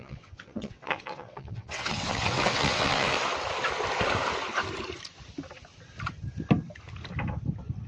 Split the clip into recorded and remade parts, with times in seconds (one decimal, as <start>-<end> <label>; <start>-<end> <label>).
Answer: 0.0-3.2 remade; 3.2-7.9 recorded